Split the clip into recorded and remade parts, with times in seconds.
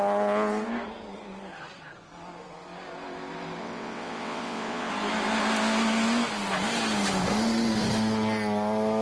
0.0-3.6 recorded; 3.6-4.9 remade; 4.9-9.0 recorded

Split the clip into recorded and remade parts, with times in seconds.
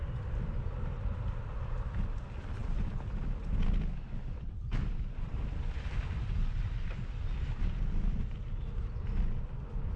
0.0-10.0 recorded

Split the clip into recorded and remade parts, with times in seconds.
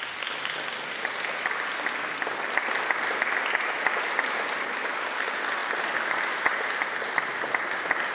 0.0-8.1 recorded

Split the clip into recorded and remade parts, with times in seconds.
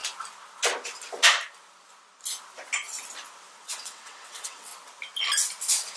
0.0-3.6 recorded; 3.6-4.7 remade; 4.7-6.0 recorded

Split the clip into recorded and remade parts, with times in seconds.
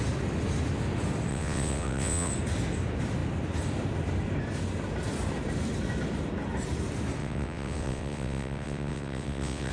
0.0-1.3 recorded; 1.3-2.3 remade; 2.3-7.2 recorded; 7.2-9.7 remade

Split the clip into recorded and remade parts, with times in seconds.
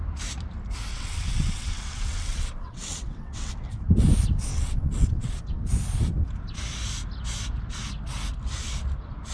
0.0-0.9 recorded; 0.9-3.5 remade; 3.5-4.5 recorded; 4.5-5.4 remade; 5.4-9.3 recorded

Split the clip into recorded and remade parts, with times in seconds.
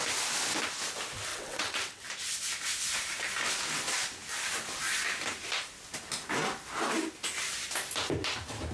0.0-1.3 recorded; 1.3-2.1 remade; 2.1-8.7 recorded